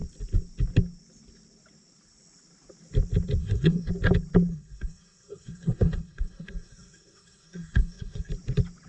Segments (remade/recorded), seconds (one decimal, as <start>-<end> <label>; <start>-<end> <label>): 0.0-3.4 recorded; 3.4-3.9 remade; 3.9-4.5 recorded; 4.5-8.3 remade; 8.3-8.9 recorded